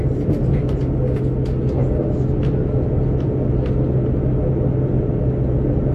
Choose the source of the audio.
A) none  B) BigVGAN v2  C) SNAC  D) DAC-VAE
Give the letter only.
A